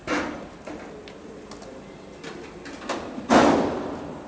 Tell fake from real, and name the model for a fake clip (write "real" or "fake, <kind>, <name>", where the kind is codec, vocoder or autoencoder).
real